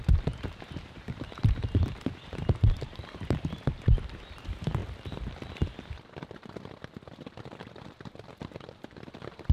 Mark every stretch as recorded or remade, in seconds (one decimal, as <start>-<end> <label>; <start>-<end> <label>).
0.0-4.8 remade; 4.8-7.6 recorded; 7.6-9.5 remade